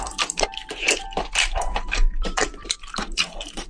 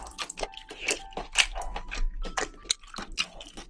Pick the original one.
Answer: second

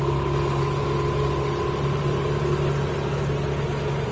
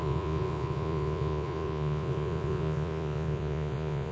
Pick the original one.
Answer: first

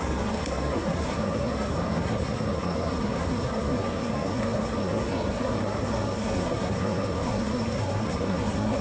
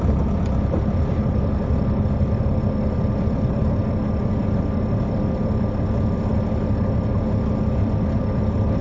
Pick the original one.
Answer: second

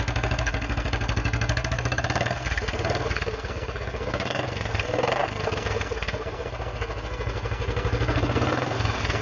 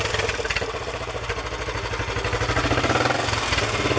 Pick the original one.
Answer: second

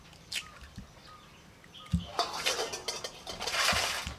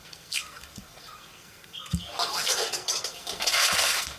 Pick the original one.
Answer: first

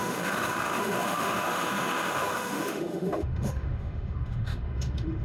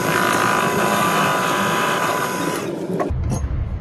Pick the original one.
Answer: second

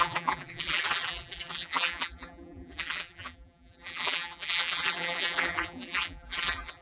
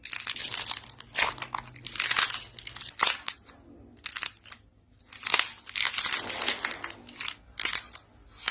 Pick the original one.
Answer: second